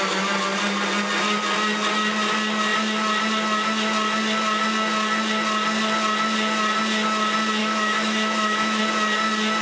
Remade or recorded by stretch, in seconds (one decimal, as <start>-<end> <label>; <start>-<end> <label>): 0.0-7.6 recorded; 7.6-8.8 remade; 8.8-9.6 recorded